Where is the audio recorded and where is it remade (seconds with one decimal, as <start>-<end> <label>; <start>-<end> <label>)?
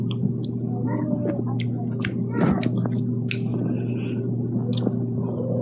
0.0-5.6 recorded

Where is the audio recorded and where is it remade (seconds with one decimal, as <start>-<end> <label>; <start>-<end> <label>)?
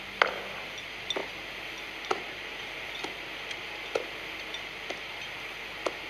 0.0-6.1 recorded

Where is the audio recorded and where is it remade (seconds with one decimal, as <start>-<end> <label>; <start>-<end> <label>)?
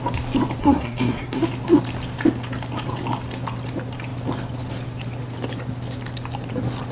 0.0-0.6 recorded; 0.6-1.4 remade; 1.4-6.9 recorded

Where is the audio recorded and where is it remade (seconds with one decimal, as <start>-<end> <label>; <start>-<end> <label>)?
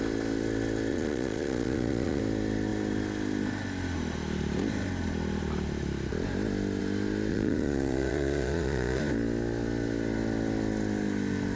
0.0-0.9 recorded; 0.9-2.2 remade; 2.2-7.3 recorded; 7.3-9.0 remade; 9.0-11.5 recorded